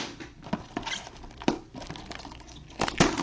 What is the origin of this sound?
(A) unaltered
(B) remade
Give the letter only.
A